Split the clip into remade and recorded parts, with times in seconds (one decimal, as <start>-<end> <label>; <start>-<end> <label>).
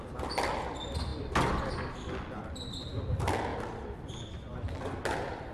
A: 0.0-3.5 recorded; 3.5-4.1 remade; 4.1-5.5 recorded